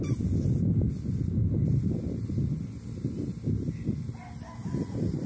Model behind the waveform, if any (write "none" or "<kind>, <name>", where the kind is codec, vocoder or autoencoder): none